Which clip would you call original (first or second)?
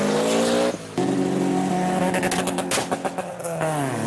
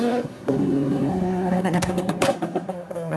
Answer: first